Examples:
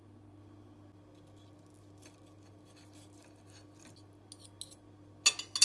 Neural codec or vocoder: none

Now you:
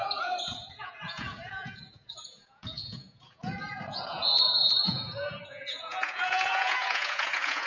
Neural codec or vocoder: vocoder, Vocos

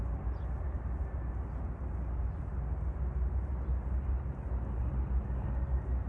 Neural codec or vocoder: none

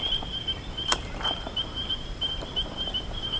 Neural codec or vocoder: vocoder, BigVGAN v2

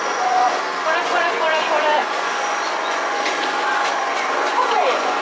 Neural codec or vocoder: vocoder, Vocos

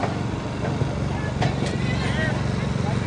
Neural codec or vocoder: none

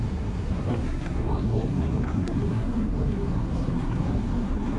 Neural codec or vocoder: codec, SNAC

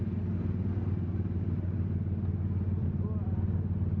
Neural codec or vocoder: none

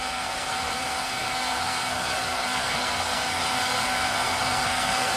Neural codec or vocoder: codec, SNAC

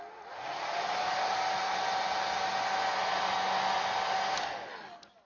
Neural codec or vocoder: none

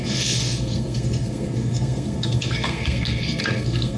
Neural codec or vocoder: codec, SNAC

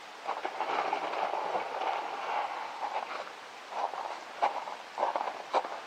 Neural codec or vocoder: none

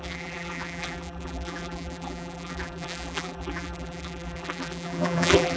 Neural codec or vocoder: vocoder, BigVGAN v2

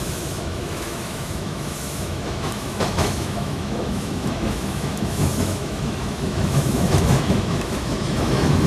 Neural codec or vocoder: autoencoder, DAC-VAE